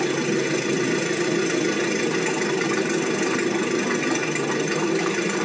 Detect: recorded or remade recorded